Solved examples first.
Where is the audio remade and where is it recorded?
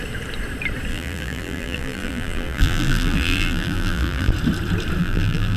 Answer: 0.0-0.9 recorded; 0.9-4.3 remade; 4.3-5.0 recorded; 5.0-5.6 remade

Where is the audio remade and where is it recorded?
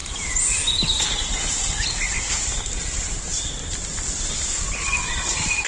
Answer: 0.0-2.2 recorded; 2.2-5.7 remade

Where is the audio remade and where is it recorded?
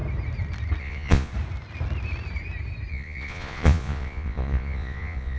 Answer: 0.0-0.8 recorded; 0.8-1.3 remade; 1.3-2.9 recorded; 2.9-5.4 remade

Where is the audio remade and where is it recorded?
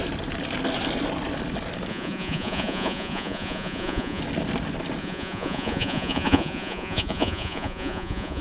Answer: 0.0-1.9 recorded; 1.9-4.2 remade; 4.2-5.0 recorded; 5.0-8.4 remade